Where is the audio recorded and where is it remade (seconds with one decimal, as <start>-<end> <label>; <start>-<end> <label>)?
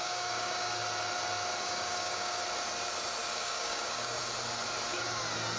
0.0-0.8 remade; 0.8-1.6 recorded; 1.6-2.4 remade; 2.4-3.3 recorded; 3.3-4.2 remade; 4.2-5.6 recorded